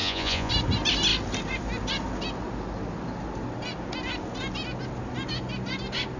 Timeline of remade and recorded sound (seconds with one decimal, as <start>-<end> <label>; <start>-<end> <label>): 0.0-0.5 remade; 0.5-6.2 recorded